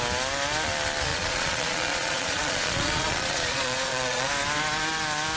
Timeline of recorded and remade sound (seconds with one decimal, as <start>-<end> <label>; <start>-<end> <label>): 0.0-1.1 recorded; 1.1-4.3 remade; 4.3-5.4 recorded